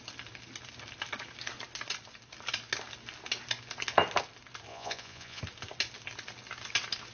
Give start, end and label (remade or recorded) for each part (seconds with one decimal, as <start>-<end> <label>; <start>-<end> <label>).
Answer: 0.0-4.7 recorded; 4.7-5.4 remade; 5.4-7.1 recorded